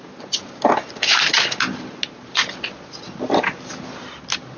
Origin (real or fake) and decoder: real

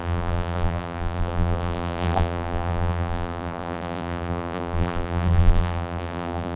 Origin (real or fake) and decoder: fake, vocoder, BigVGAN v2